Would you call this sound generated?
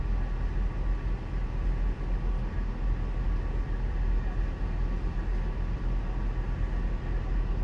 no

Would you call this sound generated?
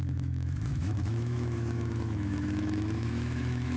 yes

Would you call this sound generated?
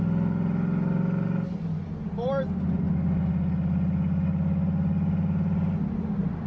no